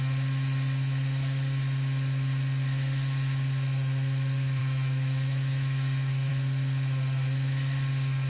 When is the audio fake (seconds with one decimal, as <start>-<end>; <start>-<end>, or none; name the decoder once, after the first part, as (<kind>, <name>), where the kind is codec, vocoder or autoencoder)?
4.6-6.3 (autoencoder, DAC-VAE)